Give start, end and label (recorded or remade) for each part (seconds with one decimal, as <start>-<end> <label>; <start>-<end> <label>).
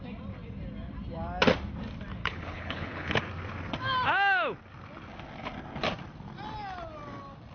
0.0-2.2 recorded; 2.2-3.2 remade; 3.2-7.5 recorded